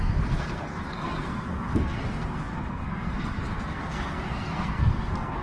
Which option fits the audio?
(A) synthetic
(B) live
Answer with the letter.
A